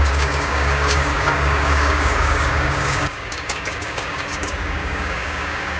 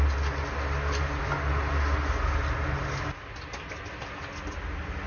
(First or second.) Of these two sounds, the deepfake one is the first